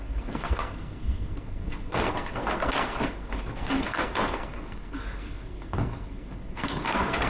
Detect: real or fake fake